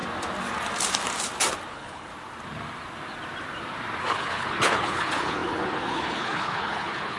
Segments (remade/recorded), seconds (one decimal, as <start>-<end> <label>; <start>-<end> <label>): 0.0-1.7 recorded; 1.7-2.1 remade; 2.1-4.0 recorded; 4.0-7.2 remade